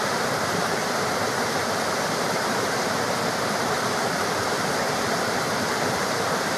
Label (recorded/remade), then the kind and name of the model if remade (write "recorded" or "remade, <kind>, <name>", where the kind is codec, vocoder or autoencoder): remade, vocoder, BigVGAN v2